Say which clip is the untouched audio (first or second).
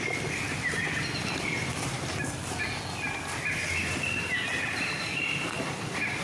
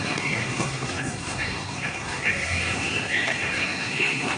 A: first